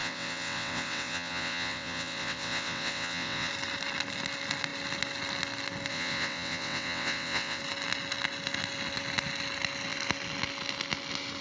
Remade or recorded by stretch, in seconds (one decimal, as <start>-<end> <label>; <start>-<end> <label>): 0.0-3.5 remade; 3.5-5.9 recorded; 5.9-7.6 remade; 7.6-11.4 recorded